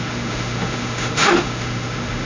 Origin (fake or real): fake